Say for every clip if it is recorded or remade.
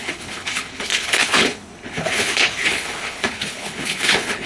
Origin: remade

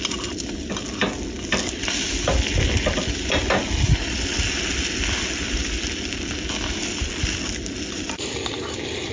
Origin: recorded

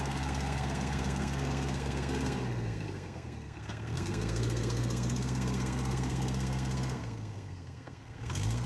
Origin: remade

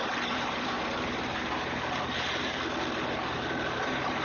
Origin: remade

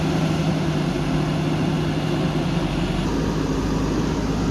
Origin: recorded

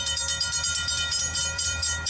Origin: remade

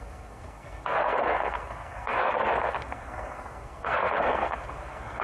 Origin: remade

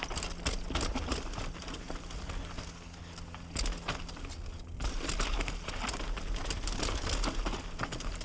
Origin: recorded